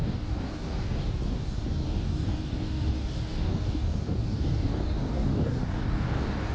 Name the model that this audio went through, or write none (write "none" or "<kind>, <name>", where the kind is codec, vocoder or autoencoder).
codec, DAC